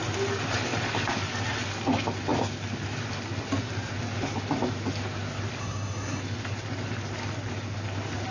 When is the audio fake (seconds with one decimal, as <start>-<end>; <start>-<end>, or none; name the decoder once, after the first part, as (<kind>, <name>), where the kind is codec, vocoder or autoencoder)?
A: 5.6-6.2 (codec, SNAC)